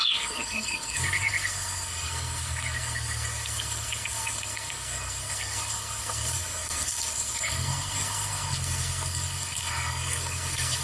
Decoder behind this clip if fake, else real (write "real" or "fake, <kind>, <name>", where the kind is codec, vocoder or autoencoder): fake, codec, SNAC